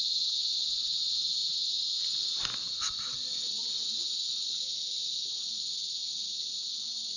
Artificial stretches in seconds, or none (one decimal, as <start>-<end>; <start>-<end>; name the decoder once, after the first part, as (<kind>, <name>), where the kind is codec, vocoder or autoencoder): none